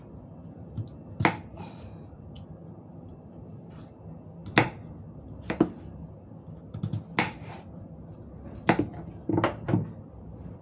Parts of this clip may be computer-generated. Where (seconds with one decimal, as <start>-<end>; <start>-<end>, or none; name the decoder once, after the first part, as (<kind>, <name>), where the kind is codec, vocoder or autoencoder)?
none

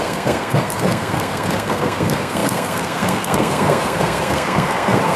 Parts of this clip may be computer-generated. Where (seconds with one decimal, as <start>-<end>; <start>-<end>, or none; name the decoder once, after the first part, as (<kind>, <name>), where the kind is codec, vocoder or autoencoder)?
0.0-5.2 (codec, SNAC)

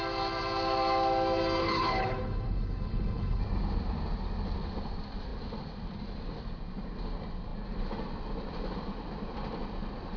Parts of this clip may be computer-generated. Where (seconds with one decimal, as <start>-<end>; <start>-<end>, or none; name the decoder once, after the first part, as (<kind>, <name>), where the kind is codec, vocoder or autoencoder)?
1.6-3.4 (codec, HILCodec)